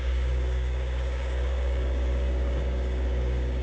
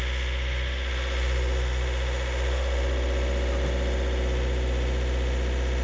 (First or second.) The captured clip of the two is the second